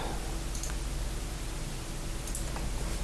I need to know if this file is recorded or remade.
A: recorded